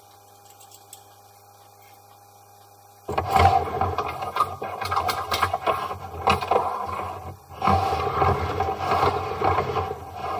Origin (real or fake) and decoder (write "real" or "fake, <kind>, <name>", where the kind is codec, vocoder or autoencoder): real